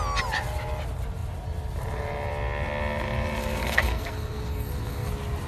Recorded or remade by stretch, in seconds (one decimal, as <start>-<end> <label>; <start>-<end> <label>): 0.0-3.4 recorded; 3.4-5.1 remade; 5.1-5.5 recorded